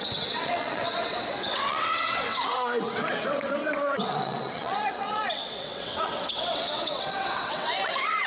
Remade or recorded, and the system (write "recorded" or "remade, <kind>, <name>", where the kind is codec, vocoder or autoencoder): remade, vocoder, WaveNeXt